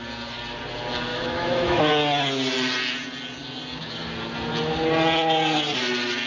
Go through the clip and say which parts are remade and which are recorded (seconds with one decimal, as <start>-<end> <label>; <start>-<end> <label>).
0.0-1.1 recorded; 1.1-1.9 remade; 1.9-6.3 recorded